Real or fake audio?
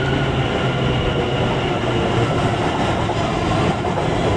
real